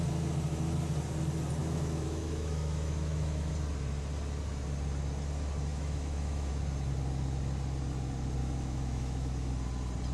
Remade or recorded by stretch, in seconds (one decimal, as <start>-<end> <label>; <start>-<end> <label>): 0.0-1.6 recorded; 1.6-3.5 remade; 3.5-5.7 recorded; 5.7-6.5 remade; 6.5-8.4 recorded; 8.4-9.5 remade; 9.5-10.1 recorded